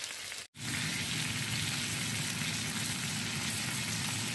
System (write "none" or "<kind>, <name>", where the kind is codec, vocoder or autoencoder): none